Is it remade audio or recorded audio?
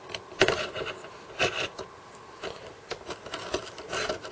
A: recorded